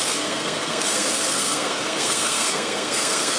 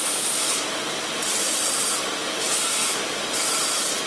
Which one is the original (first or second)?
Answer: second